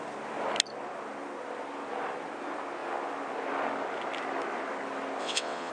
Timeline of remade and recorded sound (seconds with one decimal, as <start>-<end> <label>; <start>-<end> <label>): 0.0-5.2 recorded; 5.2-5.7 remade